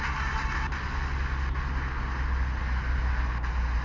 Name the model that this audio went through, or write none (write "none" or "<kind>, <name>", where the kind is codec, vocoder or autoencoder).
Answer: none